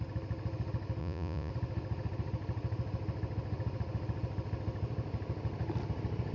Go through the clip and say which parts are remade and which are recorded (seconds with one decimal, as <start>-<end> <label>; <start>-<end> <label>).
0.0-1.0 recorded; 1.0-1.5 remade; 1.5-6.3 recorded